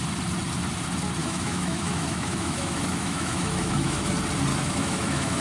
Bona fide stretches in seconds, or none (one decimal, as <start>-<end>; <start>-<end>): 0.0-1.2; 4.1-4.5